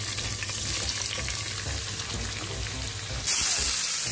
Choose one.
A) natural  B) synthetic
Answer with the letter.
A